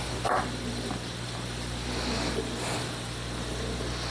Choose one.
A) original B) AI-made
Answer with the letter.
A